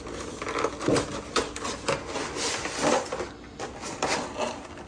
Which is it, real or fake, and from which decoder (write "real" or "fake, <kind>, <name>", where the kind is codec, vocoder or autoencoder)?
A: real